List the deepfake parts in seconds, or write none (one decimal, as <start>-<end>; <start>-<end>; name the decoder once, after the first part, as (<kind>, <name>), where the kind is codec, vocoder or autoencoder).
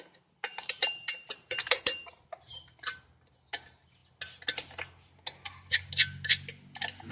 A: 0.5-3.0 (vocoder, BigVGAN v2)